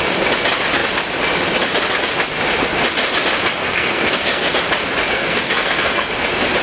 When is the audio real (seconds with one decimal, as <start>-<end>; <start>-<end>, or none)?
0.0-3.6; 4.6-5.1; 6.1-6.6